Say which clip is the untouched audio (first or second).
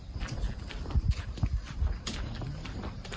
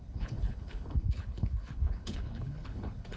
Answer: first